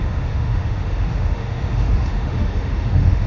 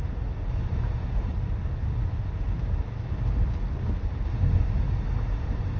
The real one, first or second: second